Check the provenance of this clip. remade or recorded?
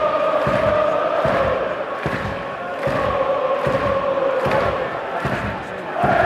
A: recorded